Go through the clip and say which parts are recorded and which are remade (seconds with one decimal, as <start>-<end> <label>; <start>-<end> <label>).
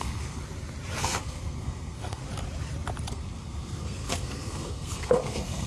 0.0-0.4 remade; 0.4-1.0 recorded; 1.0-2.2 remade; 2.2-3.1 recorded; 3.1-5.7 remade